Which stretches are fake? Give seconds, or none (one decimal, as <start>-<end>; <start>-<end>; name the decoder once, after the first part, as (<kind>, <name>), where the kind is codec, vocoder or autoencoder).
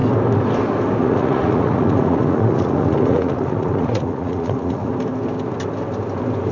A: 1.0-4.9 (vocoder, Vocos)